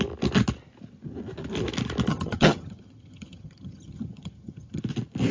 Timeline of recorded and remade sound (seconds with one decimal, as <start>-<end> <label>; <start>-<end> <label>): 0.0-2.1 recorded; 2.1-4.8 remade; 4.8-5.3 recorded